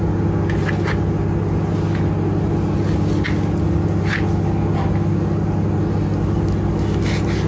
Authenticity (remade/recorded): recorded